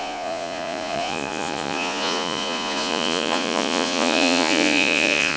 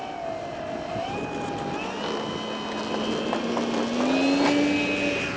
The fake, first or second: first